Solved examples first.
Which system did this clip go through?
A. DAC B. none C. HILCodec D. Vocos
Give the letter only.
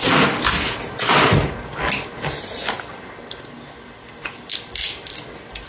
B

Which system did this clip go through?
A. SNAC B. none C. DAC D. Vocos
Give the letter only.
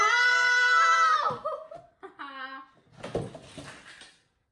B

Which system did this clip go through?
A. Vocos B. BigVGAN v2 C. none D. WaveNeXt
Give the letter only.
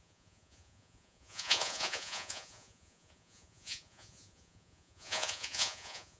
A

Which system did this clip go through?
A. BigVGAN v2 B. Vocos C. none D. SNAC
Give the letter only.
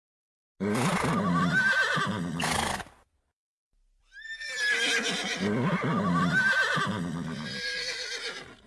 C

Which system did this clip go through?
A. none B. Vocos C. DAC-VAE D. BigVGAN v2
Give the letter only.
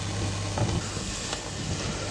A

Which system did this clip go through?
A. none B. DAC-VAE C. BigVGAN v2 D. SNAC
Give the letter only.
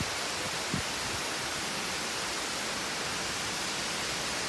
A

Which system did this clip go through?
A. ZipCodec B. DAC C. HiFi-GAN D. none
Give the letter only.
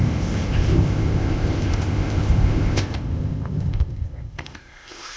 A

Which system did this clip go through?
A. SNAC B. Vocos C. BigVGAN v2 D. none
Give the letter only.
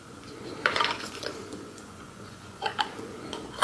B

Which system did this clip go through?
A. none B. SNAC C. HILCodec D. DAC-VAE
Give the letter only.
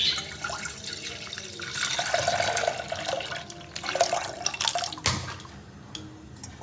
A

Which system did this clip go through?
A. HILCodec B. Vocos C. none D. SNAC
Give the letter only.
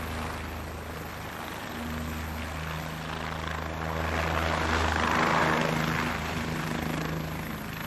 C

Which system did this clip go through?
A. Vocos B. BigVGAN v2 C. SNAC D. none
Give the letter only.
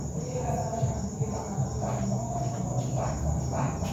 D